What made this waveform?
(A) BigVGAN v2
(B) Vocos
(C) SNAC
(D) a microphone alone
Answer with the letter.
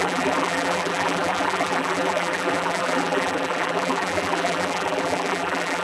A